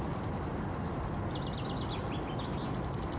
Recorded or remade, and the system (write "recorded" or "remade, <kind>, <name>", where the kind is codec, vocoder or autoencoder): recorded